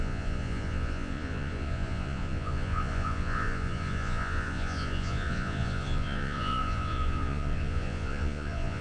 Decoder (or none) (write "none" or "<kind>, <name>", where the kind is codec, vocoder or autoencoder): vocoder, Vocos